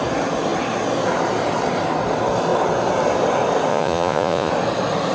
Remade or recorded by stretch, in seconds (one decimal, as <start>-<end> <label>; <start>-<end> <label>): 0.0-3.7 recorded; 3.7-4.5 remade; 4.5-5.1 recorded

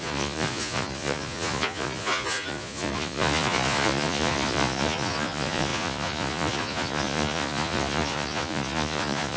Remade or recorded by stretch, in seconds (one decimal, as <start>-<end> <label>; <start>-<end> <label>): 0.0-9.4 remade

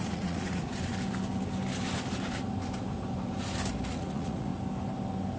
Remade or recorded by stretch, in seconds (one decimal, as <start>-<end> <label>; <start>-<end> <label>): 0.0-0.7 remade; 0.7-3.9 recorded; 3.9-4.5 remade; 4.5-5.4 recorded

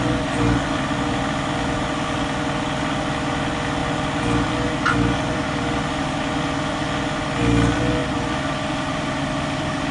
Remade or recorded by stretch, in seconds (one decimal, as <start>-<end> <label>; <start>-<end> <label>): 0.0-9.9 recorded

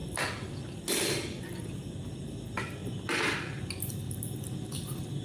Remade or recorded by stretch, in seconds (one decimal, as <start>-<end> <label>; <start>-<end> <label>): 0.0-5.2 recorded

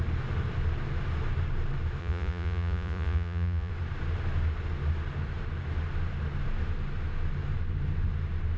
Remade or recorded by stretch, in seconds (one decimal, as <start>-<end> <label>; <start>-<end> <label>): 0.0-2.0 recorded; 2.0-3.7 remade; 3.7-8.6 recorded

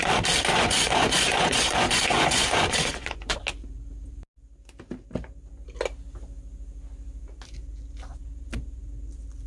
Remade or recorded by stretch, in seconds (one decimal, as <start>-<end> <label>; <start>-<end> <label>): 0.0-0.5 recorded; 0.5-3.4 remade; 3.4-9.5 recorded

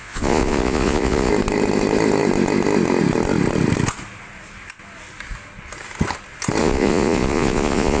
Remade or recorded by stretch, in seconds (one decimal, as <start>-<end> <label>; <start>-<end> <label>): 0.0-1.3 remade; 1.3-6.6 recorded; 6.6-8.0 remade